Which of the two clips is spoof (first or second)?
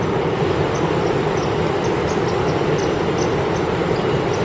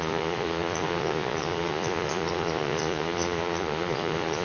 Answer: second